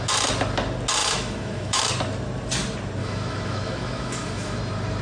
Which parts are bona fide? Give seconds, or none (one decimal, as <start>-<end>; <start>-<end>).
0.0-1.0; 1.8-3.0; 4.6-5.0